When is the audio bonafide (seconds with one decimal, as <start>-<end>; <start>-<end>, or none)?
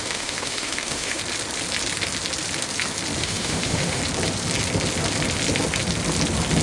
1.2-3.2; 4.0-6.6